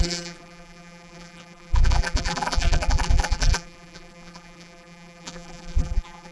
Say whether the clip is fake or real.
fake